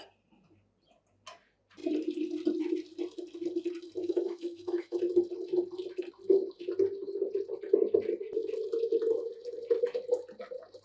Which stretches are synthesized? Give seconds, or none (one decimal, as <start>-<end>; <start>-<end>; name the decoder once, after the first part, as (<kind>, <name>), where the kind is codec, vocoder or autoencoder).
4.0-5.0 (autoencoder, DAC-VAE)